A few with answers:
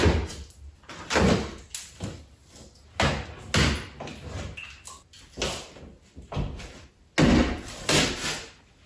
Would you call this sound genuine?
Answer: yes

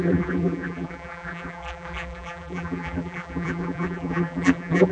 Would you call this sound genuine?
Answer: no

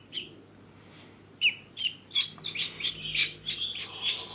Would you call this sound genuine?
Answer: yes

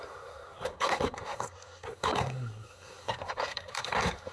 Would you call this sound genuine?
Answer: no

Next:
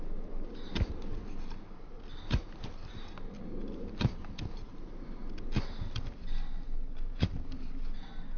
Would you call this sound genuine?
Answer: yes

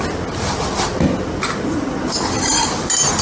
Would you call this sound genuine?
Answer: yes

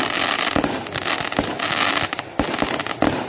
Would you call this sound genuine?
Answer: yes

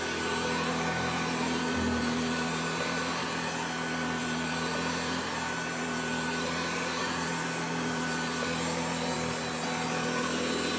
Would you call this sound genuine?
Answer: yes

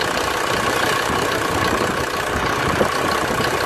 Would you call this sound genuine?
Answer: yes